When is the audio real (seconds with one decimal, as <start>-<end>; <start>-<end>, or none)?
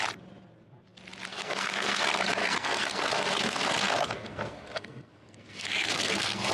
0.0-1.3; 2.0-2.4